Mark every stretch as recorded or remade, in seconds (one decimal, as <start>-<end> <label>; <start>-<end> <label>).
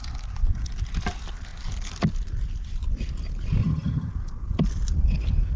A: 0.0-3.6 recorded; 3.6-4.1 remade; 4.1-5.6 recorded